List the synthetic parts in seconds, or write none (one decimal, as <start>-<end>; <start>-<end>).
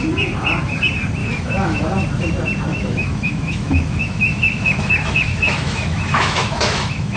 1.2-1.8; 2.7-7.2